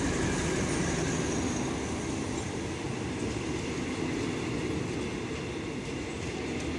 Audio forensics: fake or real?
real